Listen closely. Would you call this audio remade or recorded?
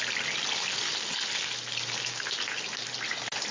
recorded